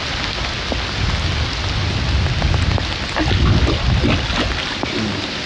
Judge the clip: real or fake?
real